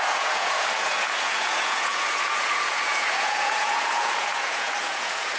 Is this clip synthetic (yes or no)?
yes